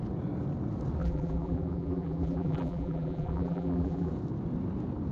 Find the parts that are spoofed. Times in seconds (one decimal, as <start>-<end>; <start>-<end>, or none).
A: 1.0-4.1

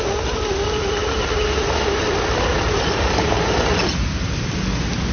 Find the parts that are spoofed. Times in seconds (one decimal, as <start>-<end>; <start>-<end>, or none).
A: none

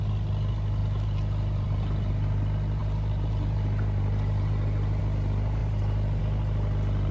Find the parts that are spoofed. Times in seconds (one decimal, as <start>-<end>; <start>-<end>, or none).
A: 0.8-2.1; 2.8-5.0; 5.6-6.2